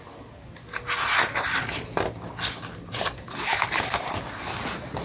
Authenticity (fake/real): real